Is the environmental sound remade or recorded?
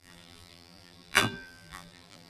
remade